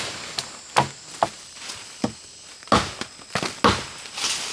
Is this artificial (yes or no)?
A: no